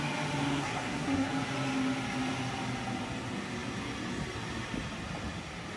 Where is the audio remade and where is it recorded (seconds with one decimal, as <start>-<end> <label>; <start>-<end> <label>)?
0.0-0.5 recorded; 0.5-1.3 remade; 1.3-5.8 recorded